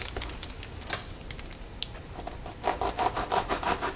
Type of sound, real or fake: real